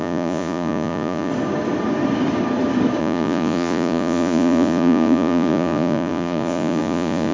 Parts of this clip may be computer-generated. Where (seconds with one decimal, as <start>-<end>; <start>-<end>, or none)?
0.0-1.3; 3.0-7.3